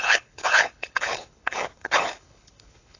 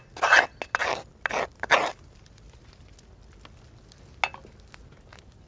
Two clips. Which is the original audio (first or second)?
second